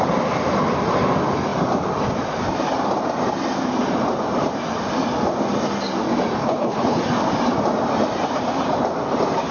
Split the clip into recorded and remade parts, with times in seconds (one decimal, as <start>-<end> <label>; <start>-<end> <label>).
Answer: 0.0-6.4 recorded; 6.4-7.0 remade; 7.0-9.5 recorded